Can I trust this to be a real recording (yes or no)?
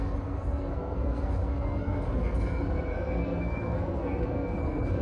no